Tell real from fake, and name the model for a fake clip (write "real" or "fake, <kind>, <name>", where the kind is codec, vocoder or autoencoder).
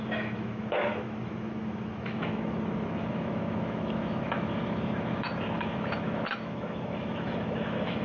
fake, autoencoder, DAC-VAE